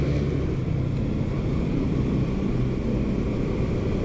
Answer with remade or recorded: recorded